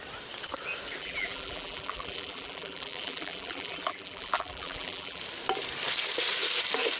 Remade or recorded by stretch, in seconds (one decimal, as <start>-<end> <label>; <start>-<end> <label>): 0.0-1.0 recorded; 1.0-5.2 remade; 5.2-7.0 recorded